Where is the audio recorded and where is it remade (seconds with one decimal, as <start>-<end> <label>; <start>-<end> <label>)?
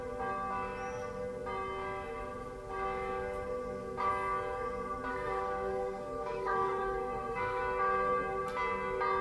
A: 0.0-5.1 recorded; 5.1-7.6 remade; 7.6-9.2 recorded